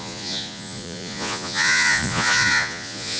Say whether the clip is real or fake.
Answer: fake